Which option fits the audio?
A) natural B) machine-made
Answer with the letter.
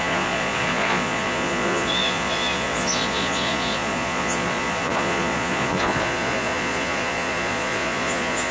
B